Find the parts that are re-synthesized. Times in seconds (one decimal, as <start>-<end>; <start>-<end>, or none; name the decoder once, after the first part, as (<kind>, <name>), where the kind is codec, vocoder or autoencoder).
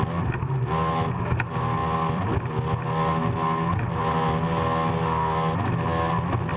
1.8-2.4 (vocoder, BigVGAN v2)